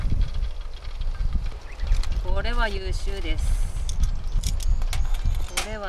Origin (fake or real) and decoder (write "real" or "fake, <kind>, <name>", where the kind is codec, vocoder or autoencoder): real